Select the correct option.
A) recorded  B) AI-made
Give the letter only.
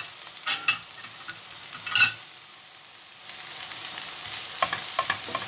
A